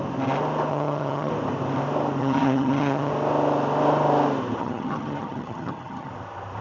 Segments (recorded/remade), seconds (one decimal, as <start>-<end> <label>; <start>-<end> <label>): 0.0-0.7 recorded; 0.7-1.3 remade; 1.3-2.2 recorded; 2.2-3.1 remade; 3.1-4.6 recorded; 4.6-6.1 remade; 6.1-6.6 recorded